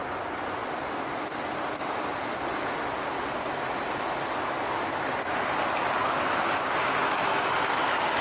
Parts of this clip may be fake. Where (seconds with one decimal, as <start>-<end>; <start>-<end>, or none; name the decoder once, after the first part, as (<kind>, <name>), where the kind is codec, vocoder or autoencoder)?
none